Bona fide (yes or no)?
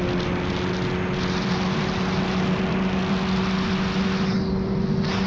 yes